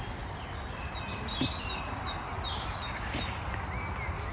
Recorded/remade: recorded